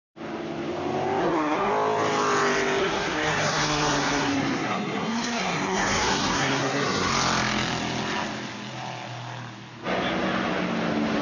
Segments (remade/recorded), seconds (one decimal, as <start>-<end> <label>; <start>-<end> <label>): 0.0-1.2 recorded; 1.2-1.7 remade; 1.7-2.8 recorded; 2.8-7.1 remade; 7.1-11.2 recorded